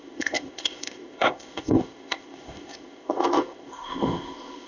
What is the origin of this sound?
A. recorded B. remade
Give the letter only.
B